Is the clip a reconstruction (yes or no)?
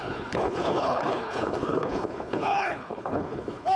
yes